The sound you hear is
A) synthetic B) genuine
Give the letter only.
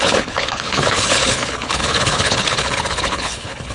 A